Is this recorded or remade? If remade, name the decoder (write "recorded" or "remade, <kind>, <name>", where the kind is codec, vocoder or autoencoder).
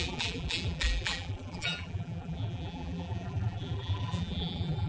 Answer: remade, vocoder, BigVGAN v2